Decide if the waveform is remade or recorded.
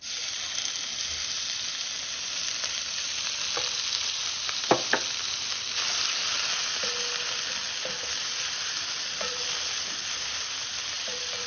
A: recorded